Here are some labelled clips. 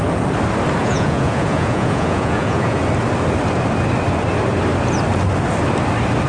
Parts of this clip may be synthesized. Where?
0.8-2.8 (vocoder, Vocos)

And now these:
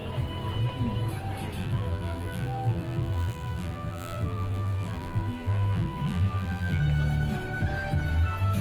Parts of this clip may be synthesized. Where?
1.6-6.8 (vocoder, BigVGAN v2)